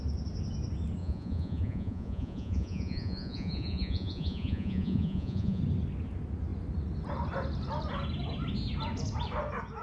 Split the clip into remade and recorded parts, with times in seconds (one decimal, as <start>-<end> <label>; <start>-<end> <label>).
0.0-1.0 recorded; 1.0-5.6 remade; 5.6-9.8 recorded